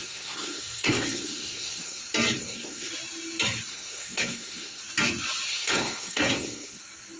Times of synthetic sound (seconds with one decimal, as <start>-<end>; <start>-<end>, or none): 0.0-2.0; 2.4-2.9; 3.7-4.8; 5.5-6.8